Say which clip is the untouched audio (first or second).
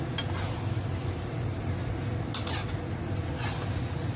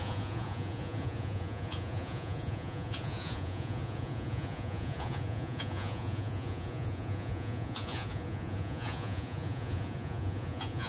first